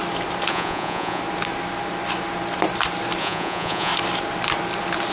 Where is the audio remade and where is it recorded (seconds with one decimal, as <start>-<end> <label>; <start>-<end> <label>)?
0.0-0.5 recorded; 0.5-1.2 remade; 1.2-3.2 recorded; 3.2-3.9 remade; 3.9-5.1 recorded